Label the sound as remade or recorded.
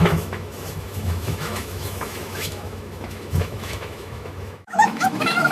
remade